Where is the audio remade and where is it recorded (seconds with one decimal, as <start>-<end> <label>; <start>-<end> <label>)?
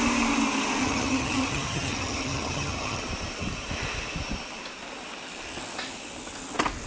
0.0-0.8 recorded; 0.8-3.0 remade; 3.0-6.9 recorded